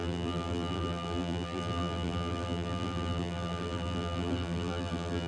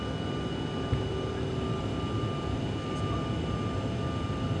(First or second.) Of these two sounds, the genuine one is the second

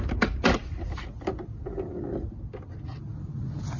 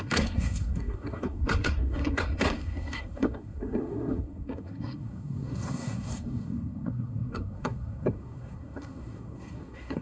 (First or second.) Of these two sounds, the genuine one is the first